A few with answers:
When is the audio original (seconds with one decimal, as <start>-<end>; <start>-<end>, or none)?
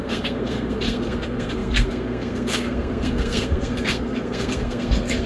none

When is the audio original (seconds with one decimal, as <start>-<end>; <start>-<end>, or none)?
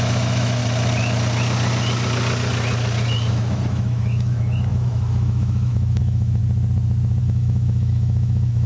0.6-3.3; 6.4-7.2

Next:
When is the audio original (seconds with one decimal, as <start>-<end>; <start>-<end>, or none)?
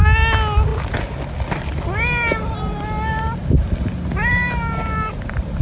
0.0-5.6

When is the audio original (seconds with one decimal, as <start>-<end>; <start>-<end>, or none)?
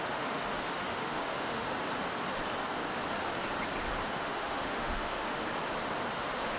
1.7-4.1; 5.4-6.1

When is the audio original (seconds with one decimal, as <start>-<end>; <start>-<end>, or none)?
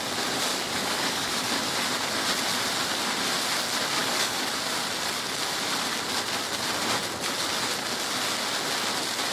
0.0-0.5; 1.4-4.0; 4.5-9.3